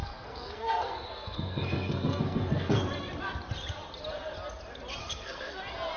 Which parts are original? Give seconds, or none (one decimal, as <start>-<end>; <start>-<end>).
2.8-5.0; 5.6-6.0